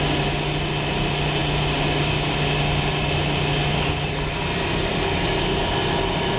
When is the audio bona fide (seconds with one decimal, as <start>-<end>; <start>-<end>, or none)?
0.0-5.8